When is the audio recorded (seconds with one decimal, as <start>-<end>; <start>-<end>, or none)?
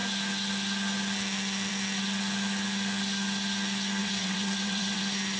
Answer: 0.0-4.0; 5.0-5.4